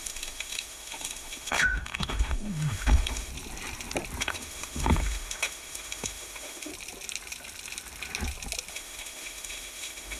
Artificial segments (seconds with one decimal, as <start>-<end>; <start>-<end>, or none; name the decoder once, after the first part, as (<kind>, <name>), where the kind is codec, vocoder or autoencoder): 0.0-3.3 (autoencoder, DAC-VAE); 4.2-6.7; 8.7-10.2